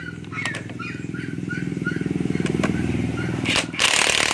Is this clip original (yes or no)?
no